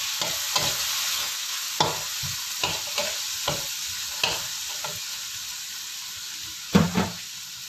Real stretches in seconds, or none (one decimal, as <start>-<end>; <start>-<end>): 0.0-1.1; 1.7-7.7